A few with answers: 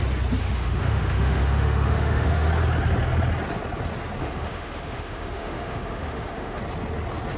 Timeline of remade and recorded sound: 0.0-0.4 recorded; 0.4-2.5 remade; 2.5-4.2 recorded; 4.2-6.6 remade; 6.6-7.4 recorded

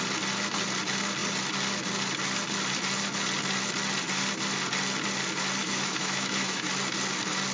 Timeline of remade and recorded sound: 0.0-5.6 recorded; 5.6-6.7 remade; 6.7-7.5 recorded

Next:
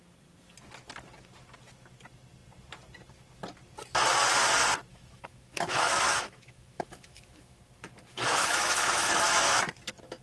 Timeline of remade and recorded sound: 0.0-4.9 recorded; 4.9-7.6 remade; 7.6-8.1 recorded; 8.1-9.7 remade; 9.7-10.2 recorded

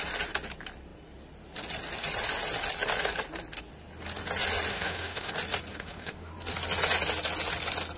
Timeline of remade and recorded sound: 0.0-4.7 recorded; 4.7-5.3 remade; 5.3-5.7 recorded; 5.7-6.3 remade; 6.3-8.0 recorded